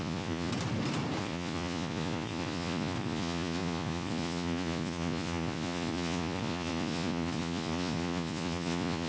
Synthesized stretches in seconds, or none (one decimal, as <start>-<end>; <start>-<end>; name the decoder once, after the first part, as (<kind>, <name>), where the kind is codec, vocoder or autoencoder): 0.0-0.5 (vocoder, Vocos); 1.2-9.1